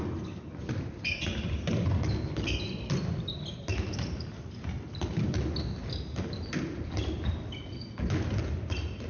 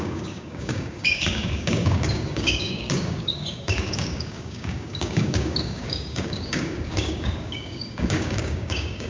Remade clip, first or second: second